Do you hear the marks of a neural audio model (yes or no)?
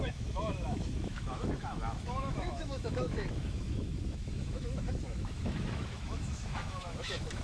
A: yes